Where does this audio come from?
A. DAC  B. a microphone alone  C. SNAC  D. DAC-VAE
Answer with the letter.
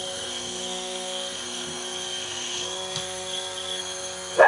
C